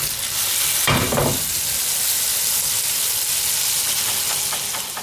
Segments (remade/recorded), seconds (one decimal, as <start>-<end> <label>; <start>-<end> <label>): 0.0-5.0 recorded